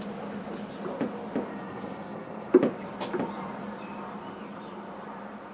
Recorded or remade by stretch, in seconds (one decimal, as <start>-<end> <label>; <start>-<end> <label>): 0.0-1.5 recorded; 1.5-2.5 remade; 2.5-5.5 recorded